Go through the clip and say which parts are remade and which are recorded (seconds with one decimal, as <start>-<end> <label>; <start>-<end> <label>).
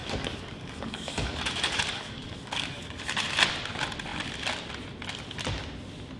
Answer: 0.0-3.0 remade; 3.0-6.2 recorded